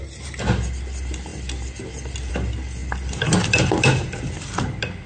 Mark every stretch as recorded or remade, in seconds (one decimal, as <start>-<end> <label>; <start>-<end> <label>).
0.0-5.1 recorded